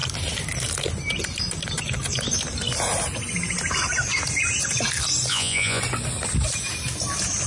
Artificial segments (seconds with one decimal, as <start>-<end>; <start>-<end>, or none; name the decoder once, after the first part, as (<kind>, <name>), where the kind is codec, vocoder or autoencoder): 5.3-5.8 (vocoder, Vocos)

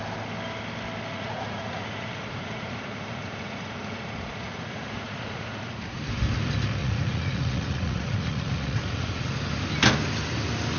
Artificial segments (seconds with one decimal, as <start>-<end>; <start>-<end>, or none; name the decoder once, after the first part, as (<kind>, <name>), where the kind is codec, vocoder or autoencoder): 1.1-6.0 (vocoder, Vocos); 6.8-9.3

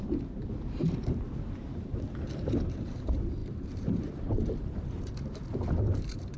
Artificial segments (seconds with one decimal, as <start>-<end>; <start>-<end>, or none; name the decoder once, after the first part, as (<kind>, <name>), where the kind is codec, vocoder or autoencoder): 0.0-6.4 (vocoder, BigVGAN v2)

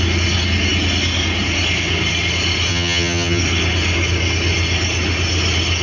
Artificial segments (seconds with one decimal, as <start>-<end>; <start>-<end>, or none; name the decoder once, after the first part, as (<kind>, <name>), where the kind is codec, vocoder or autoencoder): 2.7-3.4 (vocoder, HiFi-GAN)

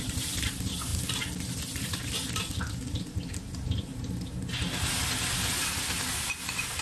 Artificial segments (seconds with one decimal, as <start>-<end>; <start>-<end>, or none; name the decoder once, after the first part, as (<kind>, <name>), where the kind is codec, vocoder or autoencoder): none